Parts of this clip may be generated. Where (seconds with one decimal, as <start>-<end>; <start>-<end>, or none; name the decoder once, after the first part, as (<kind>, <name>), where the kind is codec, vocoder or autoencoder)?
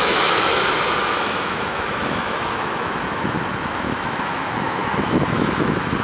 0.0-0.5 (autoencoder, DAC-VAE); 1.0-6.0